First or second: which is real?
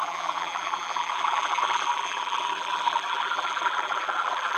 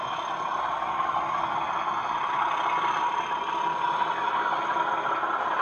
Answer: second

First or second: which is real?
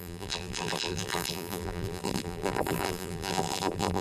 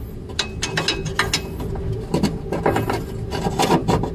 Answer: second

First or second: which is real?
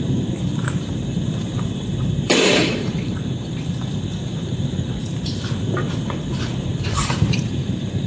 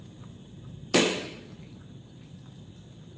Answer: second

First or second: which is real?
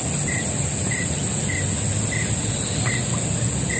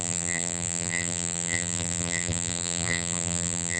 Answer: first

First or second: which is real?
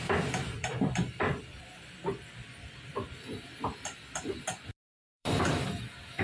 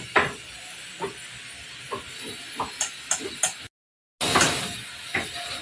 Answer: second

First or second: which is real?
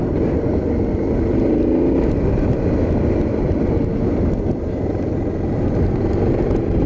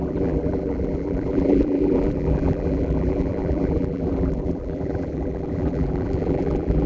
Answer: first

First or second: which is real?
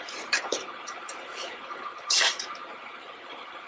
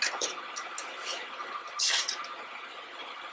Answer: second